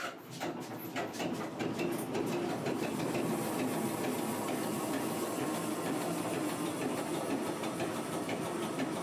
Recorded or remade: recorded